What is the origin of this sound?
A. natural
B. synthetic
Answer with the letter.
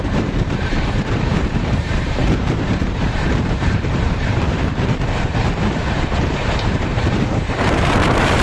B